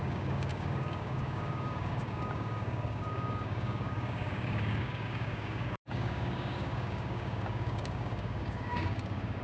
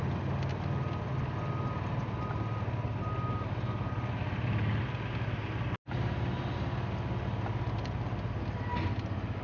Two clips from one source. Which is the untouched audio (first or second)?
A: second